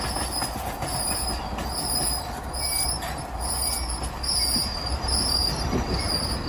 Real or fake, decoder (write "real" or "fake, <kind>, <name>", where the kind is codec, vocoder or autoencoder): real